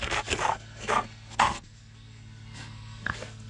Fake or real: fake